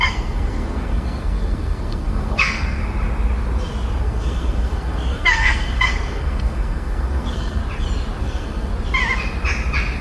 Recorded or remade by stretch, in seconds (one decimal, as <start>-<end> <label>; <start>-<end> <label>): 0.0-2.8 remade; 2.8-4.0 recorded; 4.0-7.6 remade; 7.6-8.2 recorded; 8.2-8.7 remade; 8.7-10.0 recorded